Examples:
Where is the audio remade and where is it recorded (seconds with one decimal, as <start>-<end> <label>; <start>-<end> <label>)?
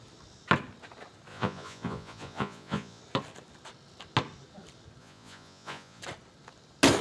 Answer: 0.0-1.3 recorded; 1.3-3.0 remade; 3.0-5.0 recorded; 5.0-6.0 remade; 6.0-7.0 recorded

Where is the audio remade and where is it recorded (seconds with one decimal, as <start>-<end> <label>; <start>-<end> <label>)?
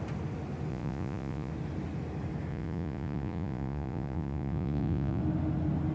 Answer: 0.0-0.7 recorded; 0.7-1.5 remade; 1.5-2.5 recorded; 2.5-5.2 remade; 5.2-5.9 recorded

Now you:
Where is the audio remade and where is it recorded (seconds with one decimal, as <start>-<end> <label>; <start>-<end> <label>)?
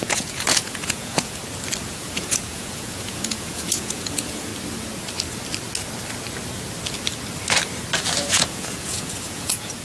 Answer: 0.0-1.4 remade; 1.4-1.9 recorded; 1.9-4.5 remade; 4.5-8.3 recorded; 8.3-9.8 remade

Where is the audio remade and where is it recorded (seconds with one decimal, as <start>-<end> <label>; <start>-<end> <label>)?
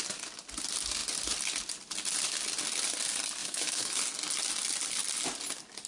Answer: 0.0-3.4 recorded; 3.4-4.0 remade; 4.0-5.9 recorded